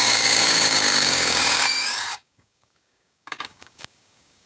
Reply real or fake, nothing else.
fake